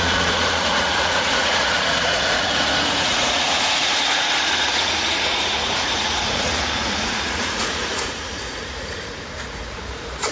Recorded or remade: remade